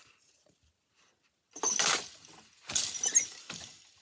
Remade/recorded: recorded